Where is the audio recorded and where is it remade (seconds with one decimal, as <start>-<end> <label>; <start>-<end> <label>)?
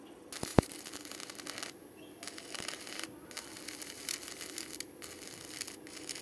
0.0-0.5 recorded; 0.5-1.3 remade; 1.3-6.2 recorded